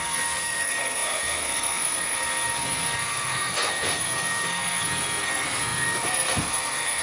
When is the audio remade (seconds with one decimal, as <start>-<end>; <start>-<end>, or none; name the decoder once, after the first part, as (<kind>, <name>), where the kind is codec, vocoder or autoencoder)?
0.0-7.0 (codec, SNAC)